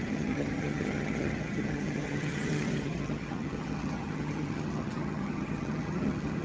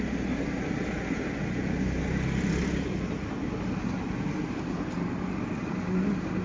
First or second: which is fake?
first